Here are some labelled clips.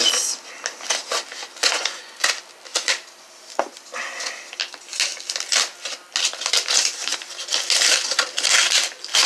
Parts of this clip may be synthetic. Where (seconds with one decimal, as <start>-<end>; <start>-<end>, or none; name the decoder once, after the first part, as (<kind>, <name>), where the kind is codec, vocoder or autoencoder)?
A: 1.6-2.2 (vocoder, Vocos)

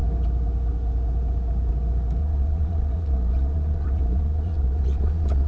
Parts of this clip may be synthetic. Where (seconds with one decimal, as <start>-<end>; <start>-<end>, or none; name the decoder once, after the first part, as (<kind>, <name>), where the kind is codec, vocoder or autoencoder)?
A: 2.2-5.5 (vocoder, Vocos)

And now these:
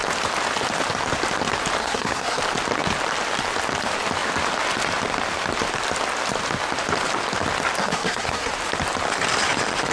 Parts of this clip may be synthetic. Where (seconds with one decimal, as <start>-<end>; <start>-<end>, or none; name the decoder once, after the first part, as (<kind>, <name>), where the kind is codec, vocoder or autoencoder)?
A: 1.8-2.4 (codec, SNAC); 7.8-8.5

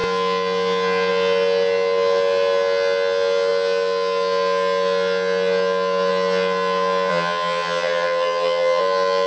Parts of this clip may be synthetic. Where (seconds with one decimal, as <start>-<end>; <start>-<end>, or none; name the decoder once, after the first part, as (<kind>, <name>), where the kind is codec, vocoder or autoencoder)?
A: 7.1-8.8 (vocoder, HiFi-GAN)